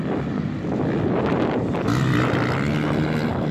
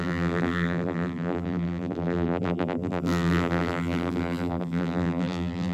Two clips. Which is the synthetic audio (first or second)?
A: second